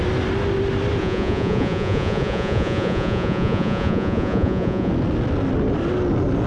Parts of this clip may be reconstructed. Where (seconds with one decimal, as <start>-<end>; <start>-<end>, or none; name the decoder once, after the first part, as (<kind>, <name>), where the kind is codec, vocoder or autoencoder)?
1.0-4.9 (vocoder, Vocos)